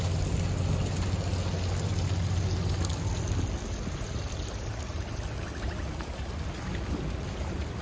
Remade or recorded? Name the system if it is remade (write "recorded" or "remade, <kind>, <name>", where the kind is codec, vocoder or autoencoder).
recorded